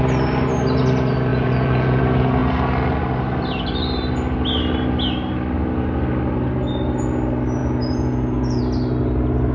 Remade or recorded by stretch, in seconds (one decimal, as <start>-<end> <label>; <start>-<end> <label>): 0.0-1.3 recorded; 1.3-2.0 remade; 2.0-7.6 recorded; 7.6-8.6 remade; 8.6-9.5 recorded